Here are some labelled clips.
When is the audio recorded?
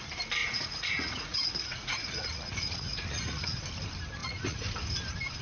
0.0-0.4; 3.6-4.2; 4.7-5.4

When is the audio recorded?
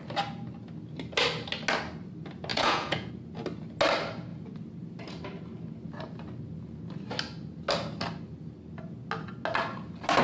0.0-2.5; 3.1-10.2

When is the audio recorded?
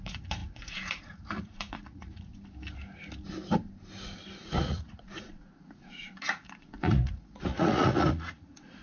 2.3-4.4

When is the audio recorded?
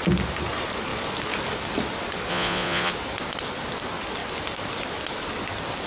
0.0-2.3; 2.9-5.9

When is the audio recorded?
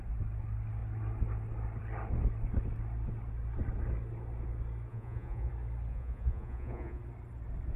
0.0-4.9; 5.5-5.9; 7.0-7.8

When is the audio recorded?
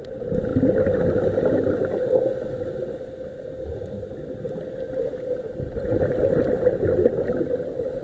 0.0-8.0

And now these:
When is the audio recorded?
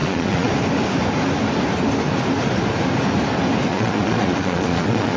0.5-3.7